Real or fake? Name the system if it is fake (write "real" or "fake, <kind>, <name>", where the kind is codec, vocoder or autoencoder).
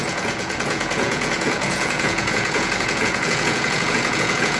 fake, vocoder, Vocos